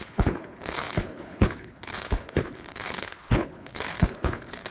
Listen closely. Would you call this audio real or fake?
fake